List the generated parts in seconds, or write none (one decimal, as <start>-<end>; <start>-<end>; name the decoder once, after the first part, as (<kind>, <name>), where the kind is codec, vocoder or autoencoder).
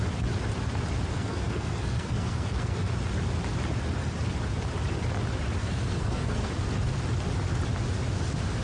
1.1-2.9 (codec, SNAC); 5.6-6.5